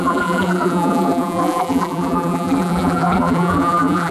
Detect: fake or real fake